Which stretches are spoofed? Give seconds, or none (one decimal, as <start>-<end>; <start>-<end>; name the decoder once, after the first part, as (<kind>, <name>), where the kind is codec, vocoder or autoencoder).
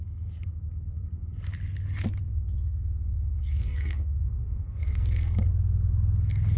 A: 0.0-1.4 (codec, SNAC); 2.3-5.5